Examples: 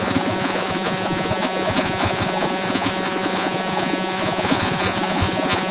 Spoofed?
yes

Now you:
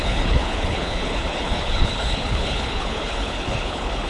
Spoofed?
yes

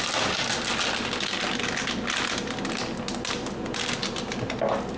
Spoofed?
no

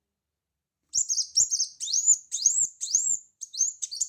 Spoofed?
yes